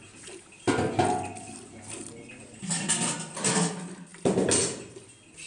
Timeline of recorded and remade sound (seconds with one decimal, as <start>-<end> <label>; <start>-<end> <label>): 0.0-5.5 recorded